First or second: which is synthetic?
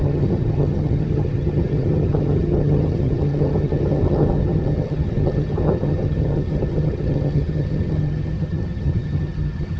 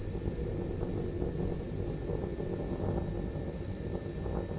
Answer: first